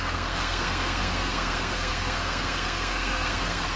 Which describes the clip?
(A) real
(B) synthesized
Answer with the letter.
B